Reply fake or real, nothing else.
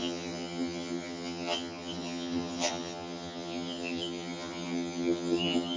fake